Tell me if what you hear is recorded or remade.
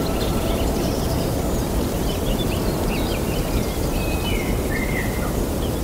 remade